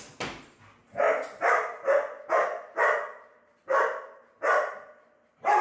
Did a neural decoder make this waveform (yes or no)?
no